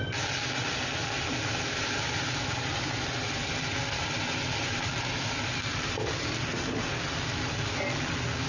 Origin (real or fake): real